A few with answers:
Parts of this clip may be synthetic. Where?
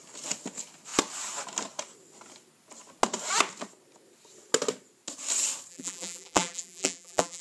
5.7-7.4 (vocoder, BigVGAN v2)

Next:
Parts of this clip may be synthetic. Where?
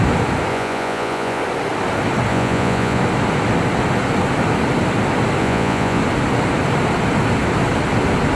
0.5-1.4 (vocoder, Vocos); 2.3-3.0; 5.4-6.0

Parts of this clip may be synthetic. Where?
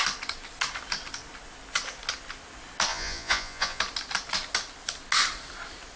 2.9-3.8 (vocoder, Vocos)